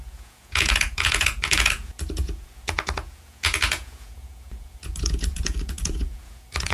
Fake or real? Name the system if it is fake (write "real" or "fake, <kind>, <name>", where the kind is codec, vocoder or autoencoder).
fake, vocoder, Vocos